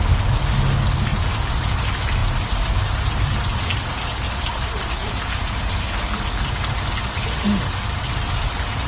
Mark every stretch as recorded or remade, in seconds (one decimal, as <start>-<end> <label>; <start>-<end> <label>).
0.0-1.1 recorded; 1.1-1.7 remade; 1.7-2.2 recorded; 2.2-3.4 remade; 3.4-5.0 recorded; 5.0-5.9 remade; 5.9-8.9 recorded